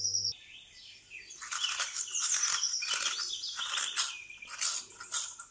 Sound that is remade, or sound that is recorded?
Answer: recorded